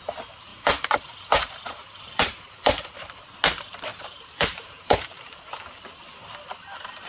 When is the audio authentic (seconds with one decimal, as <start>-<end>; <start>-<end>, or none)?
0.0-0.5; 3.2-3.9; 5.4-7.1